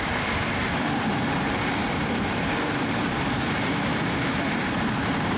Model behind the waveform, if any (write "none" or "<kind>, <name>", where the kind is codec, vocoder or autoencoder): vocoder, BigVGAN v2